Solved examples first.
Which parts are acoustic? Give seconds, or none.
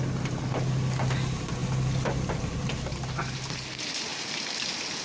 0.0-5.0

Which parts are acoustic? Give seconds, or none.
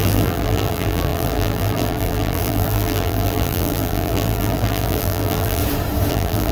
5.6-6.1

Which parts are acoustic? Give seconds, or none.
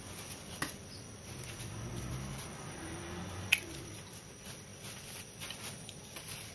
0.0-6.5